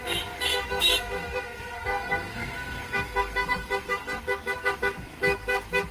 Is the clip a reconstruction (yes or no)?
yes